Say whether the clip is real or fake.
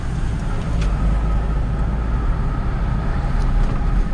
real